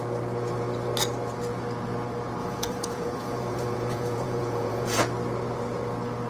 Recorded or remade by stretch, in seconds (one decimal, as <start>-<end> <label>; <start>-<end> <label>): 0.0-2.4 recorded; 2.4-5.0 remade; 5.0-6.3 recorded